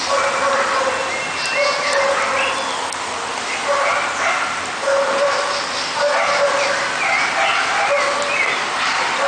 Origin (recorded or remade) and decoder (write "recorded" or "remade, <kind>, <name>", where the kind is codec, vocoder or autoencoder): recorded